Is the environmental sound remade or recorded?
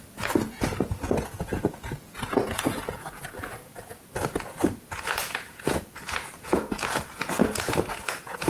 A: remade